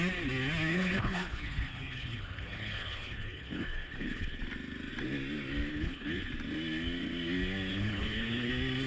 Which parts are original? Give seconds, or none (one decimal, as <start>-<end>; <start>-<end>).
0.0-0.7; 4.4-5.7; 6.2-7.7; 8.5-8.9